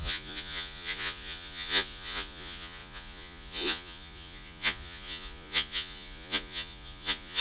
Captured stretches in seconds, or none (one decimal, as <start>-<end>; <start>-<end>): none

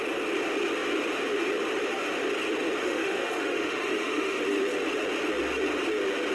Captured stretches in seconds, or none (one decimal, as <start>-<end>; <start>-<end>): 0.0-2.8; 4.4-6.3

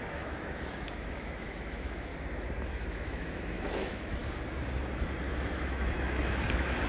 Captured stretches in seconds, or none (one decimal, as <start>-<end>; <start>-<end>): 2.1-2.7; 4.2-5.3

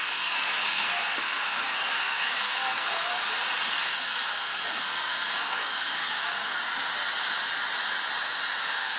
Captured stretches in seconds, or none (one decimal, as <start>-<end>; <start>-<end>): 3.1-3.7; 6.6-8.6

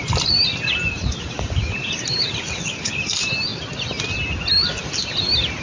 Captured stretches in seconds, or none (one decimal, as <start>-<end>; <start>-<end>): 3.5-5.6